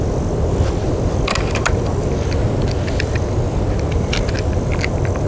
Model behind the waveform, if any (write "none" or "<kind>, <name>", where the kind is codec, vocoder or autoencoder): none